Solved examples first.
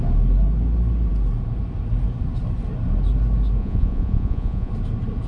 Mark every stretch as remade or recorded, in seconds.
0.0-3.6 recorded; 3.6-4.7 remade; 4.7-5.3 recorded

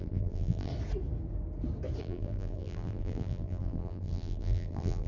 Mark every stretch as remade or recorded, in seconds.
0.0-0.7 remade; 0.7-2.0 recorded; 2.0-5.1 remade

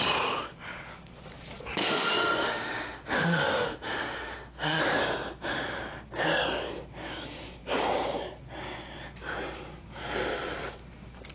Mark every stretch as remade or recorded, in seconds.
0.0-1.8 recorded; 1.8-4.8 remade; 4.8-11.3 recorded

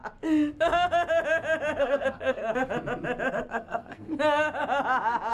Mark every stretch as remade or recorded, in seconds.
0.0-1.8 recorded; 1.8-2.4 remade; 2.4-3.3 recorded; 3.3-4.1 remade; 4.1-5.3 recorded

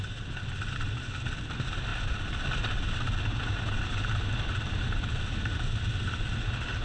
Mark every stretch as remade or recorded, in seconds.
0.0-6.8 recorded

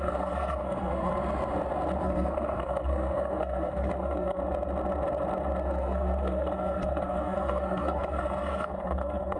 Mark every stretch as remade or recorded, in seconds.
0.0-1.1 remade; 1.1-2.0 recorded; 2.0-4.4 remade; 4.4-5.6 recorded; 5.6-9.4 remade

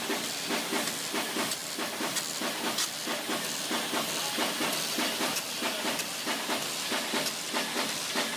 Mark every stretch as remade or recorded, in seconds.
0.0-8.4 recorded

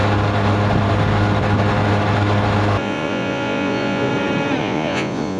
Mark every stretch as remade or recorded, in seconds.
0.0-2.8 recorded; 2.8-4.1 remade; 4.1-4.6 recorded; 4.6-5.4 remade